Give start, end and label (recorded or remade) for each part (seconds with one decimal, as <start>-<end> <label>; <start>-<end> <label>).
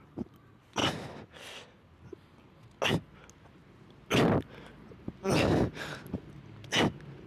0.0-7.3 recorded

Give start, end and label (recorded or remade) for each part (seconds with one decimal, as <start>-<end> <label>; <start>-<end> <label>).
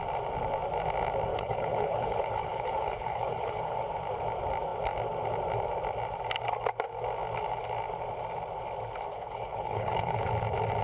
0.0-1.3 recorded; 1.3-3.8 remade; 3.8-9.1 recorded; 9.1-10.3 remade; 10.3-10.8 recorded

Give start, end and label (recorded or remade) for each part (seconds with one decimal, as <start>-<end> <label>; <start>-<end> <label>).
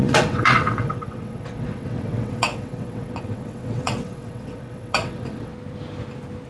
0.0-5.5 remade; 5.5-6.5 recorded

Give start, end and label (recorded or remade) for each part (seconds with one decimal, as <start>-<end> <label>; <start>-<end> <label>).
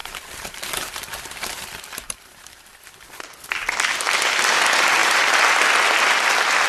0.0-3.0 remade; 3.0-5.0 recorded; 5.0-5.7 remade; 5.7-6.7 recorded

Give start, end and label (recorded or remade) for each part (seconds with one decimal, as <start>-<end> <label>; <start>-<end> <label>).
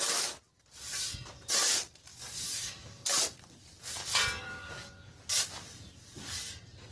0.0-2.1 recorded; 2.1-3.2 remade; 3.2-4.4 recorded; 4.4-5.2 remade; 5.2-6.9 recorded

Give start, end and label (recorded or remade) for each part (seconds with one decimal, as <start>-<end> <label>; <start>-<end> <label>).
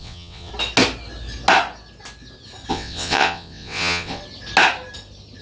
0.0-0.5 remade; 0.5-2.7 recorded; 2.7-4.2 remade; 4.2-5.4 recorded